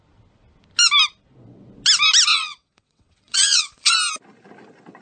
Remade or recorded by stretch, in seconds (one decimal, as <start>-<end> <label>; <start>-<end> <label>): 0.0-2.3 recorded; 2.3-3.9 remade; 3.9-5.0 recorded